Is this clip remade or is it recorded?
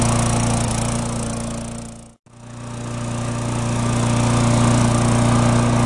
recorded